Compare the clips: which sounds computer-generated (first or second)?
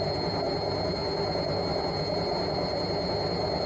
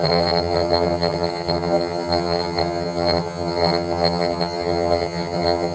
second